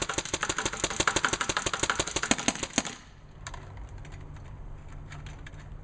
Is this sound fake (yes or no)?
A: no